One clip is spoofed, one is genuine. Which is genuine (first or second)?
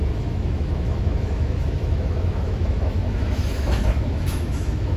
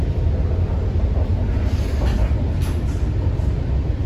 second